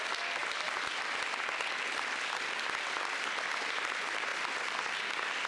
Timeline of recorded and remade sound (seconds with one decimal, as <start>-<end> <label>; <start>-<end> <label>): 0.0-5.5 recorded